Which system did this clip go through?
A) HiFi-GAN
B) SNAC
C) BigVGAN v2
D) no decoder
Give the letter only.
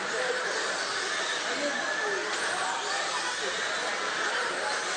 D